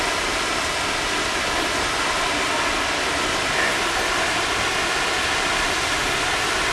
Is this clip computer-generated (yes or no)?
no